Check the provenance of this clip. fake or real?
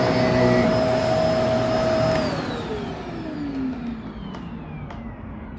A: real